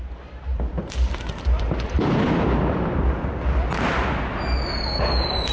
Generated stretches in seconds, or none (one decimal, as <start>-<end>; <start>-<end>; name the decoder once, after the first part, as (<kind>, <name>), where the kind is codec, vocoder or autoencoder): 0.7-3.3 (vocoder, BigVGAN v2)